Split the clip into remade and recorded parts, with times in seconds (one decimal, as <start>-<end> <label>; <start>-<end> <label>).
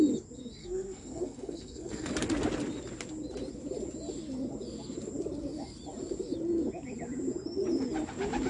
0.0-0.6 recorded; 0.6-2.1 remade; 2.1-8.5 recorded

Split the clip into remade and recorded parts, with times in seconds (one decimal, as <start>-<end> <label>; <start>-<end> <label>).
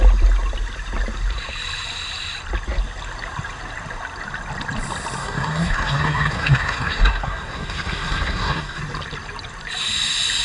0.0-5.2 recorded; 5.2-8.8 remade; 8.8-10.4 recorded